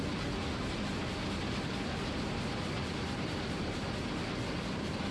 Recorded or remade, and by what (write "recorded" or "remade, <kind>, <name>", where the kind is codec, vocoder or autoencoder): recorded